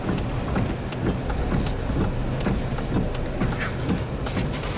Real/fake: real